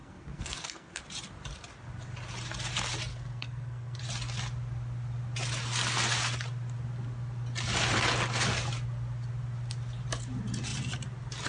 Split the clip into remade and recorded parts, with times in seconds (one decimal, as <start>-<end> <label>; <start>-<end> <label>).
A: 0.0-1.0 remade; 1.0-3.1 recorded; 3.1-4.0 remade; 4.0-11.5 recorded